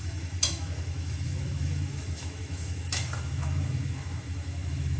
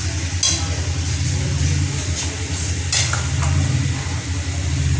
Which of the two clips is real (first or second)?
second